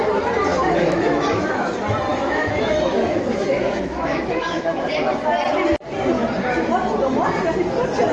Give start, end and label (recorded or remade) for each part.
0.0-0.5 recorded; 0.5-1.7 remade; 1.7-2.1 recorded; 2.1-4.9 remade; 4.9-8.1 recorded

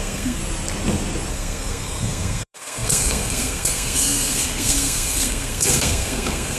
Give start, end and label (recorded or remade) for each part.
0.0-0.4 remade; 0.4-1.3 recorded; 1.3-6.6 remade

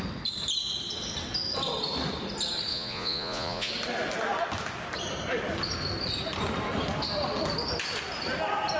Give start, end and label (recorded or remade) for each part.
0.0-2.7 recorded; 2.7-3.7 remade; 3.7-8.8 recorded

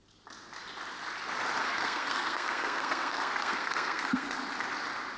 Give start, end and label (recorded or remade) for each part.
0.0-1.6 recorded; 1.6-4.5 remade; 4.5-5.2 recorded

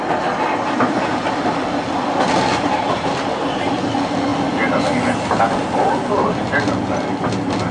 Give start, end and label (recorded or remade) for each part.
0.0-2.5 recorded; 2.5-3.1 remade; 3.1-7.7 recorded